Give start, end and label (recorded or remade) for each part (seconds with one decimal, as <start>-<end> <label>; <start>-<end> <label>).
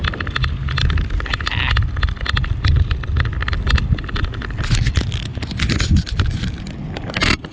0.0-7.5 recorded